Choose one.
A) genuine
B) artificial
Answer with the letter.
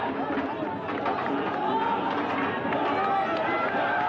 A